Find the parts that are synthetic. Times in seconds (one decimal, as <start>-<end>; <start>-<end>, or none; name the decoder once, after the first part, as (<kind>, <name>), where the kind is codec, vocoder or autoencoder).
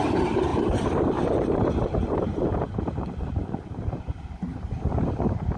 0.0-5.6 (vocoder, BigVGAN v2)